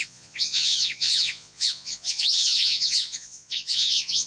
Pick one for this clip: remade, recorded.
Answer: remade